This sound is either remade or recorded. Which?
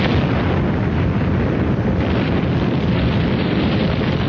recorded